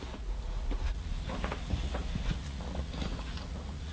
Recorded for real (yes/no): no